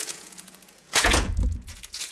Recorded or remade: remade